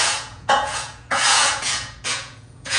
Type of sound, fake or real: fake